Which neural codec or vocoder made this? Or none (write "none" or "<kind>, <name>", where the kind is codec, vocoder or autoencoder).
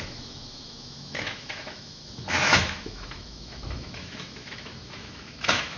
autoencoder, DAC-VAE